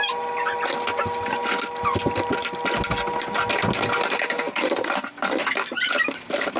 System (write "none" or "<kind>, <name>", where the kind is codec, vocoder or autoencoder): none